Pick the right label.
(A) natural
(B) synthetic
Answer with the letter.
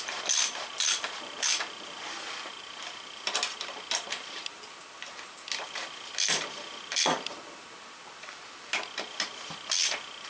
A